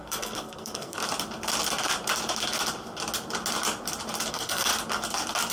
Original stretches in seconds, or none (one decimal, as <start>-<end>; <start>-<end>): 1.0-4.3; 4.7-5.5